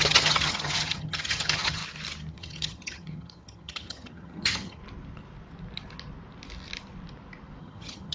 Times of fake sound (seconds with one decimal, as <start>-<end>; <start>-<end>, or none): 0.0-1.8; 2.3-4.8; 7.6-8.1